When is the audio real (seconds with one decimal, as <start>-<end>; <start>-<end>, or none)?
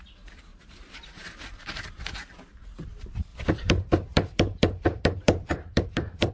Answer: 0.0-0.5; 1.3-3.3